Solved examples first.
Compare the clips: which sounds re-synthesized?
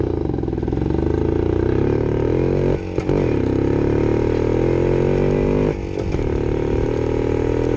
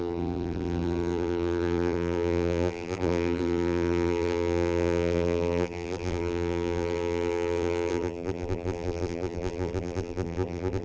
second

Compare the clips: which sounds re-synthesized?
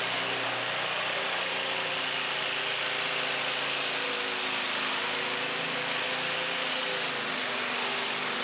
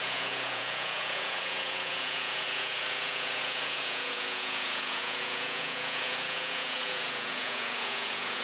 second